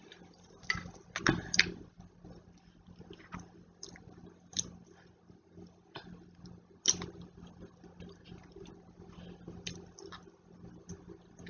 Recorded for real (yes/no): yes